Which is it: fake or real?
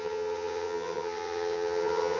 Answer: fake